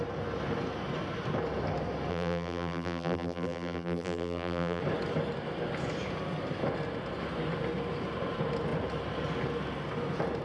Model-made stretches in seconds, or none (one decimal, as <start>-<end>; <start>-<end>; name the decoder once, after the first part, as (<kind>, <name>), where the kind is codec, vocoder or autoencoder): 2.1-4.8 (vocoder, BigVGAN v2)